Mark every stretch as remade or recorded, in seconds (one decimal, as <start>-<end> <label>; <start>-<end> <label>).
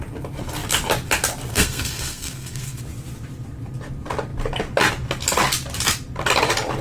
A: 0.0-1.5 recorded; 1.5-2.8 remade; 2.8-6.8 recorded